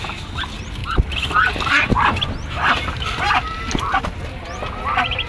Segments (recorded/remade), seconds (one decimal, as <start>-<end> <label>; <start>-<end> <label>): 0.0-5.3 recorded